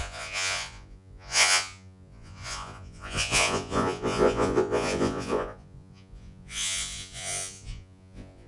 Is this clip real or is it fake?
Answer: fake